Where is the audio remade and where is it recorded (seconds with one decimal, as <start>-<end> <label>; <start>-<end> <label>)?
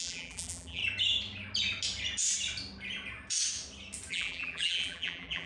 0.0-0.8 remade; 0.8-4.1 recorded; 4.1-5.5 remade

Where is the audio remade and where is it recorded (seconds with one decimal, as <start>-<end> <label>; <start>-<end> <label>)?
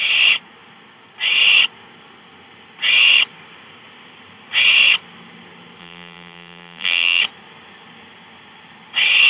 0.0-5.8 recorded; 5.8-7.2 remade; 7.2-9.3 recorded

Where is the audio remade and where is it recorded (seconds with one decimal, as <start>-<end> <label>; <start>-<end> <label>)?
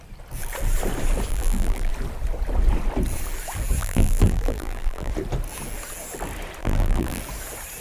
0.0-1.3 recorded; 1.3-1.9 remade; 1.9-3.8 recorded; 3.8-5.1 remade; 5.1-6.6 recorded; 6.6-7.2 remade; 7.2-7.8 recorded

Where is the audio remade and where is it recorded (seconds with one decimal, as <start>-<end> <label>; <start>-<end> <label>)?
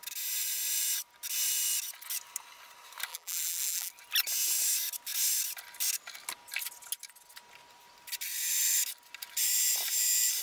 0.0-3.1 recorded; 3.1-3.9 remade; 3.9-10.4 recorded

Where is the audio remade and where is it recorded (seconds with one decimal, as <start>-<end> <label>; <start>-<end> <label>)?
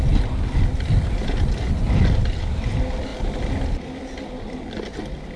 0.0-5.4 recorded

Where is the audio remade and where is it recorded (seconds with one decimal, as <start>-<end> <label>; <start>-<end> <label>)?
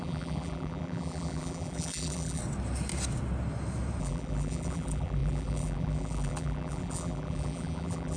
0.0-2.4 remade; 2.4-4.0 recorded; 4.0-8.2 remade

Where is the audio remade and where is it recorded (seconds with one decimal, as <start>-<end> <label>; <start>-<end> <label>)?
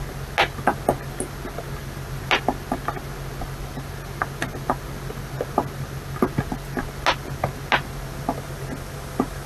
0.0-9.5 recorded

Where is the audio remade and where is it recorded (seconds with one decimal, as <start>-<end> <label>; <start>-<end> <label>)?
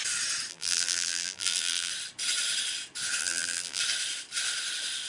0.0-0.5 recorded; 0.5-1.9 remade; 1.9-3.2 recorded; 3.2-3.8 remade; 3.8-5.1 recorded